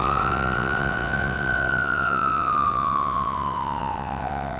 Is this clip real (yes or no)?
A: no